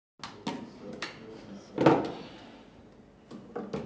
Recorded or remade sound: recorded